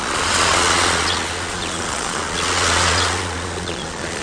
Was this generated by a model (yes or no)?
yes